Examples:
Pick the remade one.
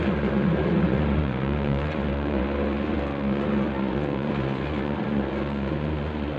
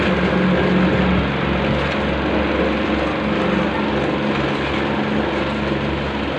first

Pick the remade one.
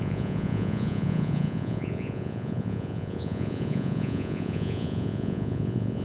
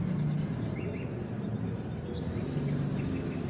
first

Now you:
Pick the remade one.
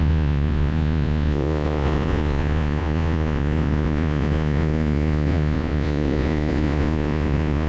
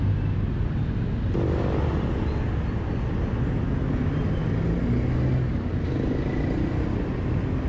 first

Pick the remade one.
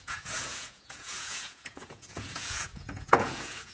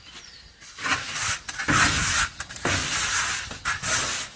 first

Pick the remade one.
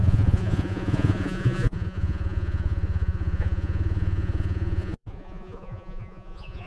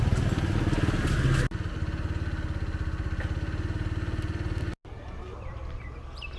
first